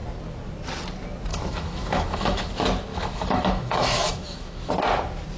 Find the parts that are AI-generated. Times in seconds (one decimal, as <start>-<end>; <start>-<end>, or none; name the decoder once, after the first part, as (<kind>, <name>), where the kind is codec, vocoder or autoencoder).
1.3-2.5 (autoencoder, DAC-VAE); 2.9-4.7